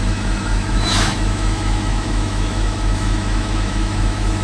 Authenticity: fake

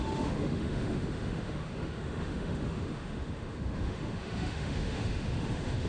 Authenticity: fake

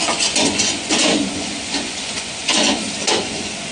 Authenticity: fake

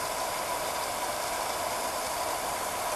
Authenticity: real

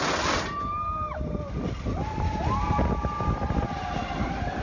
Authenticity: real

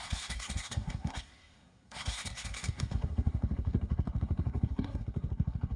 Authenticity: fake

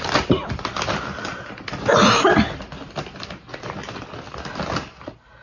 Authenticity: real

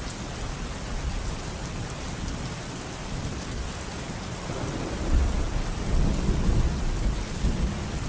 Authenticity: real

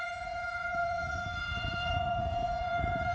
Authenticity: fake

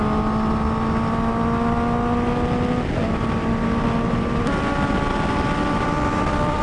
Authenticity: real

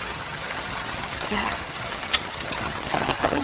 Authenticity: fake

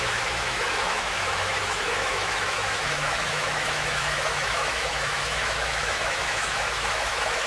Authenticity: fake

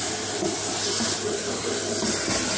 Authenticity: real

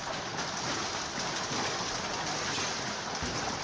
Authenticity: real